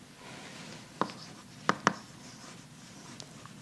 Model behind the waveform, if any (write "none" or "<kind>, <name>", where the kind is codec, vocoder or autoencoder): none